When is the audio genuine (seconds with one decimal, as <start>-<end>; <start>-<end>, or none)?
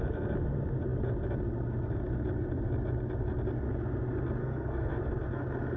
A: 0.0-4.4; 4.9-5.8